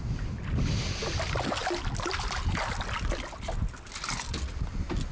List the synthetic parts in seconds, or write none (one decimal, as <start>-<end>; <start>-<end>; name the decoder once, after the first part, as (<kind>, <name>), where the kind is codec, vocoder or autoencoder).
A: none